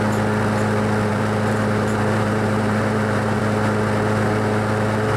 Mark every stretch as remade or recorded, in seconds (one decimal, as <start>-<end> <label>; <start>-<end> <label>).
0.0-1.1 recorded; 1.1-3.4 remade; 3.4-5.2 recorded